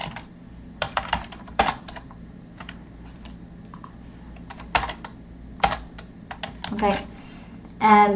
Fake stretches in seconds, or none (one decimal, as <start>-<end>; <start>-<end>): 0.7-2.8; 6.9-8.2